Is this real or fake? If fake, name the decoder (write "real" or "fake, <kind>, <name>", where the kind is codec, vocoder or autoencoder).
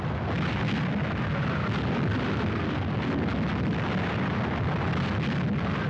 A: real